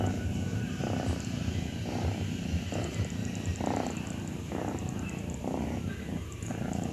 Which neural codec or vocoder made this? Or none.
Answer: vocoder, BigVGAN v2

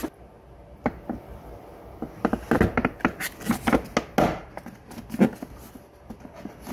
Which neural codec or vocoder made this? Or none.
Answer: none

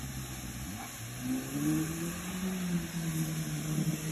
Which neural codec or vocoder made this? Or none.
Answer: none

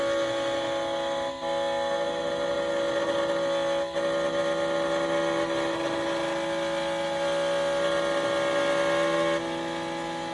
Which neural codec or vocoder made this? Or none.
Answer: none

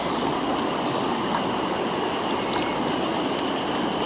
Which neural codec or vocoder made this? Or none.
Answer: none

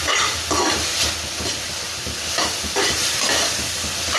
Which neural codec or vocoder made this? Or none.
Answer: vocoder, BigVGAN v2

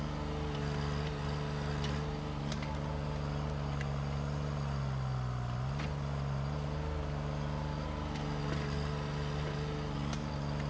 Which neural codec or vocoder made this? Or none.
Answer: none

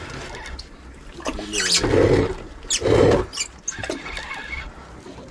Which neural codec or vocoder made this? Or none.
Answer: none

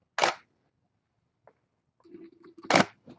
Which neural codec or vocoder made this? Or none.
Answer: none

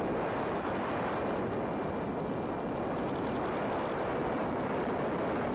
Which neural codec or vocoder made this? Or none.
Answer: none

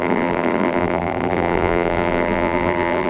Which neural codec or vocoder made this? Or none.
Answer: vocoder, BigVGAN v2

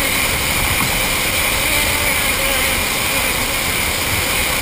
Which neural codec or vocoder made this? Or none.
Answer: none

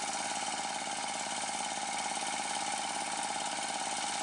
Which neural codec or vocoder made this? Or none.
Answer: none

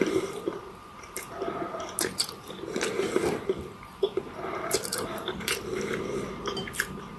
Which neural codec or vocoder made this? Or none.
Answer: vocoder, BigVGAN v2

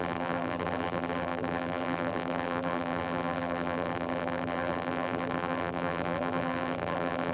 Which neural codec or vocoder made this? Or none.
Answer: vocoder, BigVGAN v2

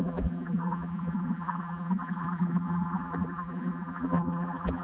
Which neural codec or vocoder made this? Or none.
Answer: vocoder, BigVGAN v2